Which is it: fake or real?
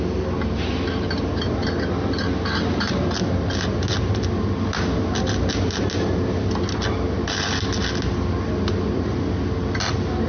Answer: real